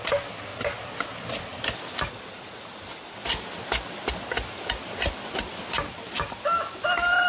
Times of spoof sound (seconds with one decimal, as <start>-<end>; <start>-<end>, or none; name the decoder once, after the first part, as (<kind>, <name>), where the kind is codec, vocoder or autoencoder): none